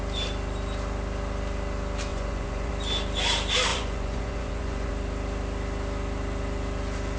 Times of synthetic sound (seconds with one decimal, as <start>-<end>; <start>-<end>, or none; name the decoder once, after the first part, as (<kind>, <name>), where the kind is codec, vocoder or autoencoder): 2.1-2.7 (vocoder, Vocos); 3.7-4.9